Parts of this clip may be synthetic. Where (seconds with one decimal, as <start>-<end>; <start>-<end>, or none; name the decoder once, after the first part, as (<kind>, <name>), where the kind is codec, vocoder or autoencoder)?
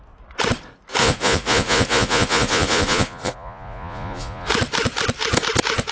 1.0-4.5 (vocoder, Vocos)